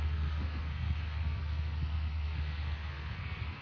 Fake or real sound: fake